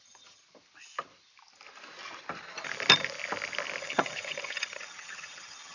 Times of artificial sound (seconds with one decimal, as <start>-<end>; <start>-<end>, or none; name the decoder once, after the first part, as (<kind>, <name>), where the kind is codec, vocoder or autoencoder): 0.0-0.4 (vocoder, HiFi-GAN); 3.8-5.7